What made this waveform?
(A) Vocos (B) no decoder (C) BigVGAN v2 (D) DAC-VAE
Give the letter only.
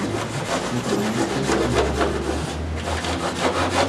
B